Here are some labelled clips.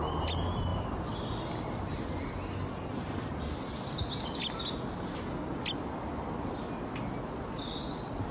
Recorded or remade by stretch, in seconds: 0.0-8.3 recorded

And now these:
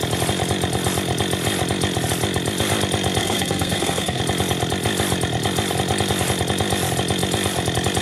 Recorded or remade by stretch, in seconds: 0.0-3.2 recorded; 3.2-4.2 remade; 4.2-8.0 recorded

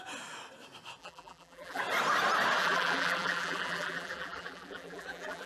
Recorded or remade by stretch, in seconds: 0.0-1.0 recorded; 1.0-1.8 remade; 1.8-2.6 recorded; 2.6-5.5 remade